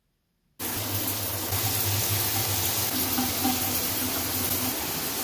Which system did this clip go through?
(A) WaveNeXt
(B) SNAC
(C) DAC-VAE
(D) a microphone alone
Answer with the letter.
D